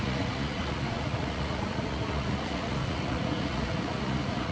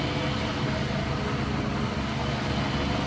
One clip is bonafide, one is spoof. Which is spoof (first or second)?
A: first